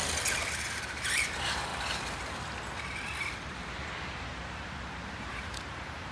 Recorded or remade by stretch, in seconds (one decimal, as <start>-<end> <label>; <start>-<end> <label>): 0.0-0.8 recorded; 0.8-1.7 remade; 1.7-3.5 recorded; 3.5-6.1 remade